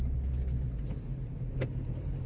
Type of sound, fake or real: real